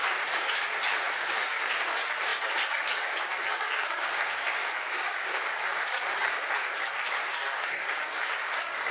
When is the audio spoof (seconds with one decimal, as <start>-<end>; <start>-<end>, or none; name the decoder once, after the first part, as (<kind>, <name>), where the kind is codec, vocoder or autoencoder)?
0.0-6.8 (codec, DAC); 7.3-8.9